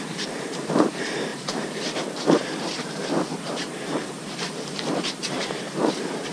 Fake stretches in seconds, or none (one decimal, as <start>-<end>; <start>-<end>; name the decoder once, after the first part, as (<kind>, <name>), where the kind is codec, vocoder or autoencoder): 0.0-6.3 (vocoder, BigVGAN v2)